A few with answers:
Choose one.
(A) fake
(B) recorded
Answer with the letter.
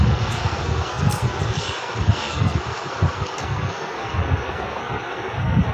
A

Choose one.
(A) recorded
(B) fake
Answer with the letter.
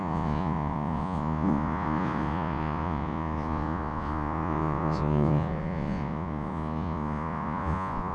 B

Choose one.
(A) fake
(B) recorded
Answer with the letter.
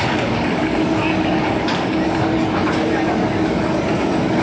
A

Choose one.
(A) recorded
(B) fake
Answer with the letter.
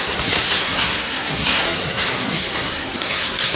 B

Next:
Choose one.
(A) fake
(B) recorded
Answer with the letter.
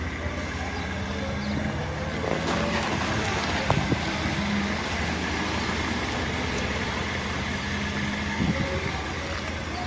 B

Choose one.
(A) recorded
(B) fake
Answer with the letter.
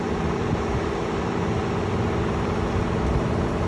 A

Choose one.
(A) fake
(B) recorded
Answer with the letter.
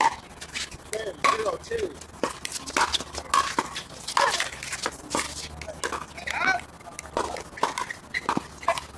B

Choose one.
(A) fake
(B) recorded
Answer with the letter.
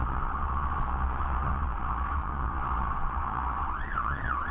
A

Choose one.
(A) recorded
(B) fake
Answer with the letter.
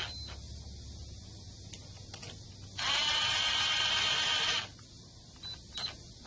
A